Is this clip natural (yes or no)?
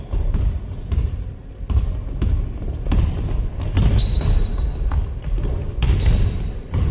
yes